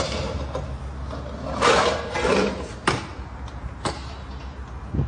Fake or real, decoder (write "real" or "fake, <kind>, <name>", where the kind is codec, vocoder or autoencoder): real